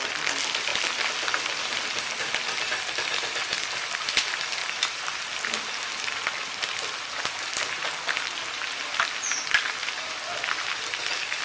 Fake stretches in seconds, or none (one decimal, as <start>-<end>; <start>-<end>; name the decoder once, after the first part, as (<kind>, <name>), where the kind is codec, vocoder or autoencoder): none